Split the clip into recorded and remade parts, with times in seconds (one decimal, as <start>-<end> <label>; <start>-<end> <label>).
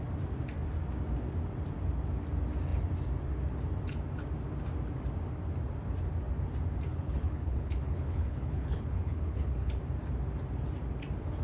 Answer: 0.0-6.9 recorded; 6.9-9.8 remade; 9.8-11.4 recorded